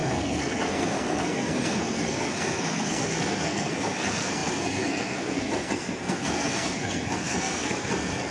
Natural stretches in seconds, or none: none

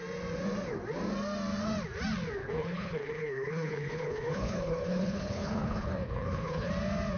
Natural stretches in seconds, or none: 0.0-2.4; 6.7-7.2

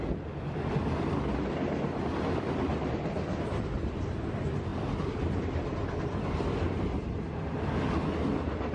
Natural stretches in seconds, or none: 0.0-8.7

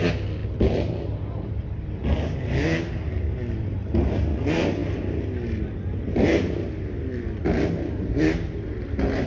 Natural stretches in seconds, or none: 0.0-9.3

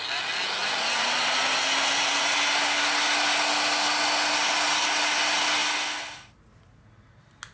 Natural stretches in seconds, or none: 0.0-7.5

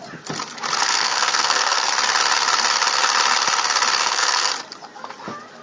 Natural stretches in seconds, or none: 0.0-0.8; 1.9-4.0; 4.5-5.6

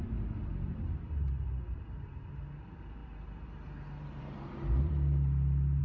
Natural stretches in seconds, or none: none